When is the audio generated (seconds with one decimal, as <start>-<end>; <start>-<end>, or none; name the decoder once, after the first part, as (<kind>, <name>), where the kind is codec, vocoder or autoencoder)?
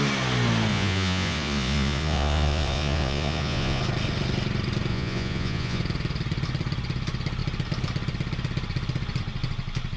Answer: 0.7-3.8 (vocoder, Vocos); 4.9-5.8